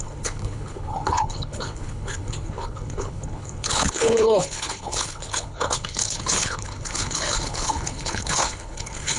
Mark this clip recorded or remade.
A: remade